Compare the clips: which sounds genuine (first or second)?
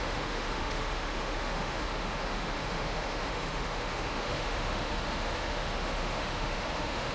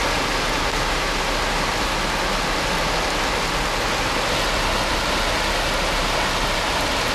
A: second